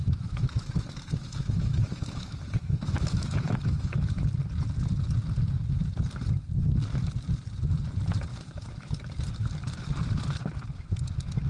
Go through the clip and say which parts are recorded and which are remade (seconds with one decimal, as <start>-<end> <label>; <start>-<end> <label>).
0.0-4.3 remade; 4.3-8.3 recorded; 8.3-9.0 remade; 9.0-11.5 recorded